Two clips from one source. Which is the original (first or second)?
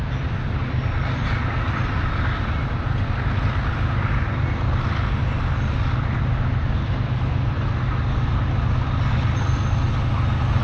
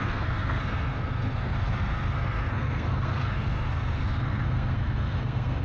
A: first